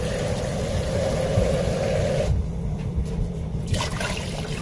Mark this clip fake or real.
real